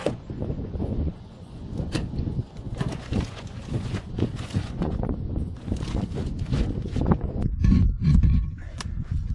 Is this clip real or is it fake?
fake